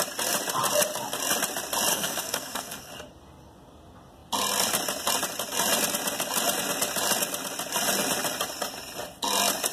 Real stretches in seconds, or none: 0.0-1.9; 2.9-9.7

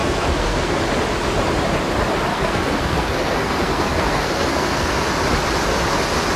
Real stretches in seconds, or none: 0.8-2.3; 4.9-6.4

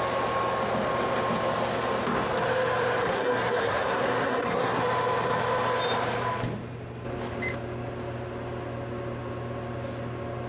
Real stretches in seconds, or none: 0.0-3.0; 4.8-10.5

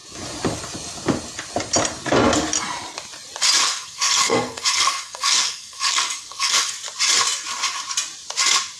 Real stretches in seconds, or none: 0.0-3.6; 6.7-8.8

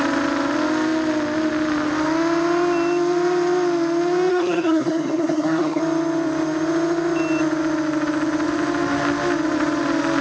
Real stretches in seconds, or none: 0.0-4.3; 5.8-10.2